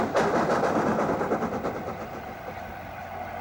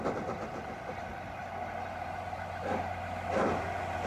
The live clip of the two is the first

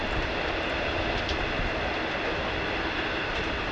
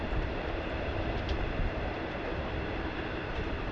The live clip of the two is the first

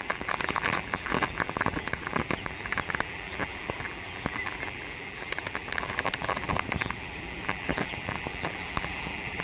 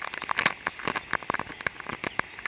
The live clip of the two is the second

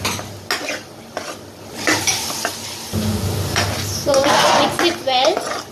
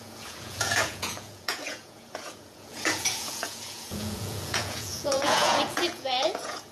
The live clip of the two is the first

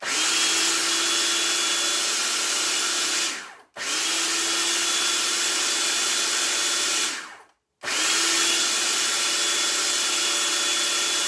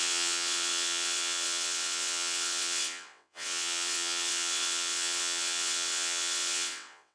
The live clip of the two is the first